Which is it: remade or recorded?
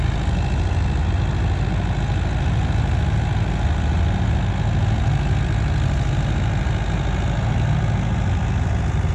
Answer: recorded